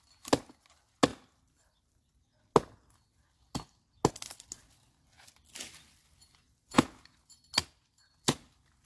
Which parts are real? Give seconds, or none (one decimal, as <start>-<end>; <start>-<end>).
0.0-8.9